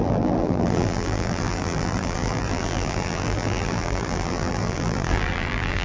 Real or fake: fake